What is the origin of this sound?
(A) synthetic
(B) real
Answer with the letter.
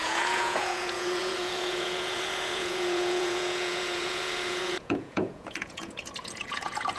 A